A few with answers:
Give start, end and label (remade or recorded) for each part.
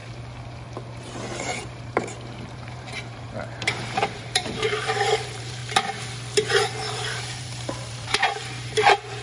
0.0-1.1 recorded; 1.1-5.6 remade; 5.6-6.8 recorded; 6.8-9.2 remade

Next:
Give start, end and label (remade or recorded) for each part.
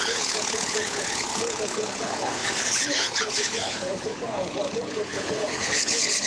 0.0-6.3 remade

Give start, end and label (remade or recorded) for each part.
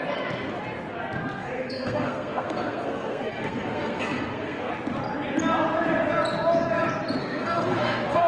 0.0-1.4 recorded; 1.4-4.7 remade; 4.7-7.2 recorded; 7.2-8.3 remade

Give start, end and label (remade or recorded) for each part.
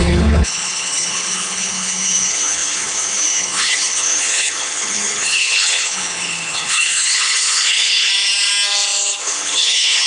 0.0-8.1 remade; 8.1-9.2 recorded; 9.2-10.1 remade